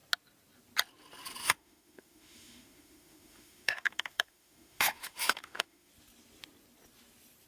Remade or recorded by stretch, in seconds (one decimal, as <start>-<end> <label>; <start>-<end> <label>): 0.0-1.4 recorded; 1.4-5.9 remade; 5.9-7.5 recorded